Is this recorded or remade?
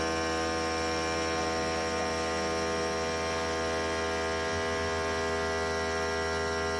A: recorded